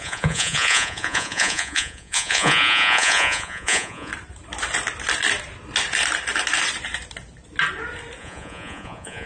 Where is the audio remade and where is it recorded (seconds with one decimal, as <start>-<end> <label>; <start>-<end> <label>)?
0.0-4.1 remade; 4.1-8.2 recorded; 8.2-9.3 remade